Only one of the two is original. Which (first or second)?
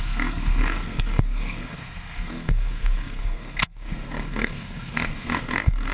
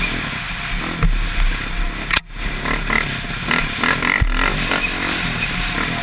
second